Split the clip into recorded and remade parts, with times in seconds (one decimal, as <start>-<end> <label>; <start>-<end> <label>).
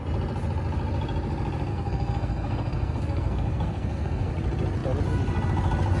0.0-1.7 recorded; 1.7-4.3 remade; 4.3-6.0 recorded